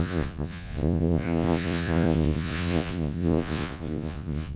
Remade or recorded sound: remade